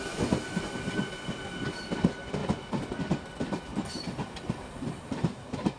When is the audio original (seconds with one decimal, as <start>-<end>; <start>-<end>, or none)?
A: 0.0-3.7